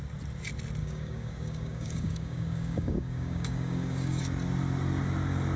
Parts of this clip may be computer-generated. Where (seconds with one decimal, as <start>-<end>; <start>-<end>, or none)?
0.8-4.2